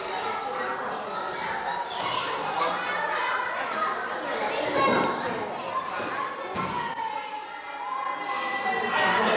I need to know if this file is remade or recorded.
recorded